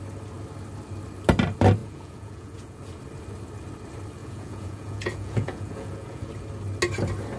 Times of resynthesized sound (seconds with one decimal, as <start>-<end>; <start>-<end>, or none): 1.8-2.8; 4.2-6.3